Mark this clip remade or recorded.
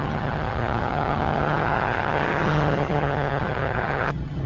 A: remade